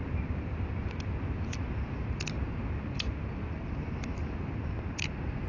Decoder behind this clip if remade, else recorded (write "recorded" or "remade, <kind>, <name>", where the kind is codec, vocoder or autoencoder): recorded